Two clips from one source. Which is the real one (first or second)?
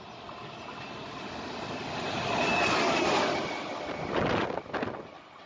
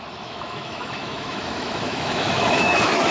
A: first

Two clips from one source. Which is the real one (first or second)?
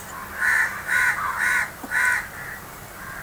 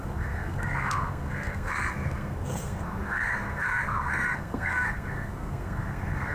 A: first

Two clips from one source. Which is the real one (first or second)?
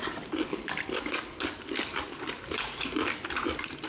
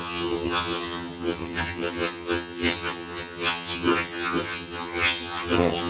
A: first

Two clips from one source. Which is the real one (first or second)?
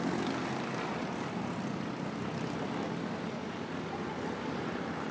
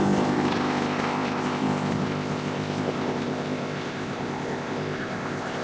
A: first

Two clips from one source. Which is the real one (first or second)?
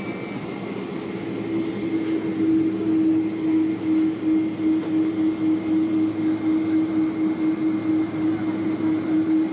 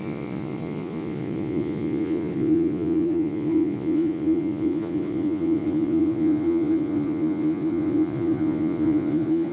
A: first